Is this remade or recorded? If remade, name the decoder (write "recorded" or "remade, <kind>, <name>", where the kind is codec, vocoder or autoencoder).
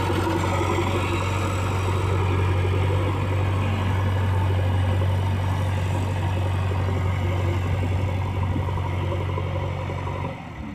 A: recorded